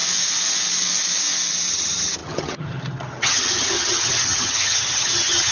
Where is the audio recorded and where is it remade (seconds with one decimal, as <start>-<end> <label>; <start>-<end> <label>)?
0.0-1.7 recorded; 1.7-5.5 remade